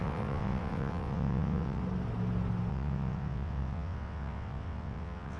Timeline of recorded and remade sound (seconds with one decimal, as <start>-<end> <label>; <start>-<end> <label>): 0.0-1.8 remade; 1.8-2.7 recorded; 2.7-5.4 remade